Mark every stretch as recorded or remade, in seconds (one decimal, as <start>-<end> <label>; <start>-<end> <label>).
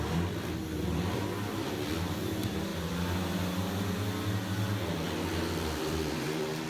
0.0-2.7 remade; 2.7-5.5 recorded; 5.5-6.7 remade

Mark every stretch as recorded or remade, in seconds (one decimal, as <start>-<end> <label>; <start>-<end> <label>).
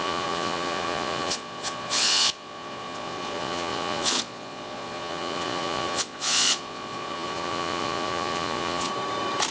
0.0-8.9 remade; 8.9-9.5 recorded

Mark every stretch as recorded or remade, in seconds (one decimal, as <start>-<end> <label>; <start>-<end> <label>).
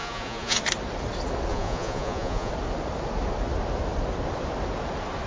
0.0-0.6 remade; 0.6-1.5 recorded; 1.5-2.5 remade; 2.5-5.3 recorded